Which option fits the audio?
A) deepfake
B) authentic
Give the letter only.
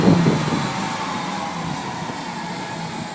B